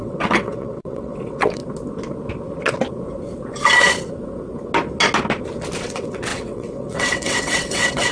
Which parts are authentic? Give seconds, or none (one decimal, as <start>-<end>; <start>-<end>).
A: 1.6-5.8